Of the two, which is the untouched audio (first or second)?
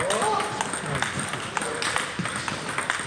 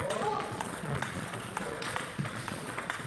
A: first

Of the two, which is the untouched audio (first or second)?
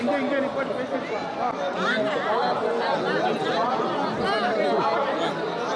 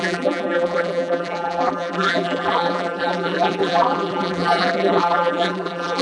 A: first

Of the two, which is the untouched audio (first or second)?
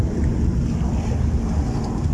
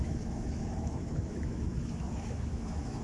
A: first